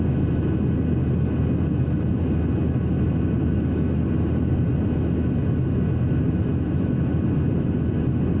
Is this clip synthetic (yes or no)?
no